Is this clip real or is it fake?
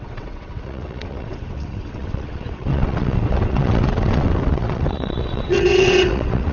fake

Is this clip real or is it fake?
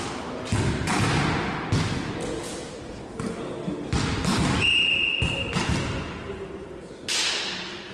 real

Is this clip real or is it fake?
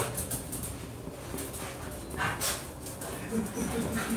real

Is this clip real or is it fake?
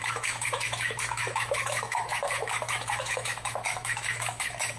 fake